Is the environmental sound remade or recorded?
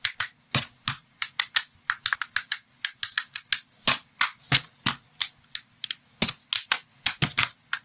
recorded